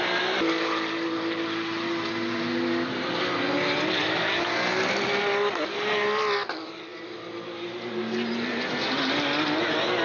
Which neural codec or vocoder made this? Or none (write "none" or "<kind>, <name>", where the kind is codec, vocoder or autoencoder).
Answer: none